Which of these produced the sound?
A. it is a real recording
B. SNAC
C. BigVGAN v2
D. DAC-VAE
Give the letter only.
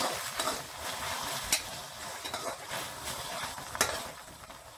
A